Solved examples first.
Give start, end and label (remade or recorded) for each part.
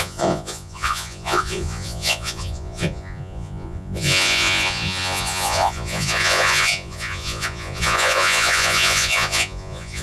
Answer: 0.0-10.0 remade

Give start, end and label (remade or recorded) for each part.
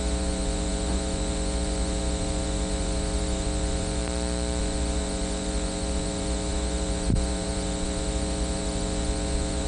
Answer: 0.0-4.0 remade; 4.0-4.6 recorded; 4.6-9.7 remade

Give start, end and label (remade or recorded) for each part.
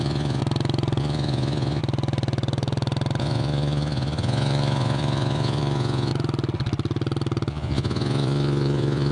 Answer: 0.0-0.4 remade; 0.4-1.0 recorded; 1.0-1.8 remade; 1.8-3.2 recorded; 3.2-6.1 remade; 6.1-7.5 recorded; 7.5-9.1 remade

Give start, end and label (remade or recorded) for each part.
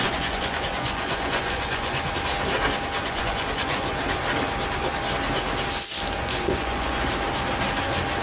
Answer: 0.0-2.1 remade; 2.1-3.0 recorded; 3.0-3.9 remade; 3.9-6.2 recorded; 6.2-7.1 remade; 7.1-8.2 recorded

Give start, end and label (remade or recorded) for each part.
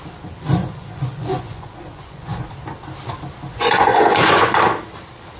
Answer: 0.0-0.6 recorded; 0.6-2.5 remade; 2.5-3.5 recorded; 3.5-4.6 remade; 4.6-5.4 recorded